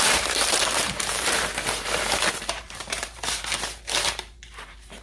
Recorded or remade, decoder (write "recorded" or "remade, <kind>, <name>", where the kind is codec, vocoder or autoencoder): remade, vocoder, BigVGAN v2